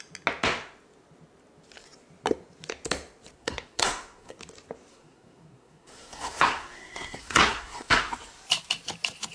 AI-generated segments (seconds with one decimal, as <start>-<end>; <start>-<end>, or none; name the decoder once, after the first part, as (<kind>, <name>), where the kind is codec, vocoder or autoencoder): 3.4-4.4 (codec, SNAC); 4.9-8.0